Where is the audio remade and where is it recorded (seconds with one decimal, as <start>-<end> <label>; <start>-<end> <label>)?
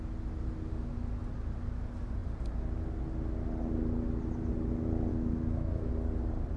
0.0-5.1 recorded; 5.1-5.9 remade; 5.9-6.6 recorded